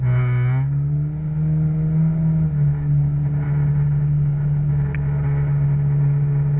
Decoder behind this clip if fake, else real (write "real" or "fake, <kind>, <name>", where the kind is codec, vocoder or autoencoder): real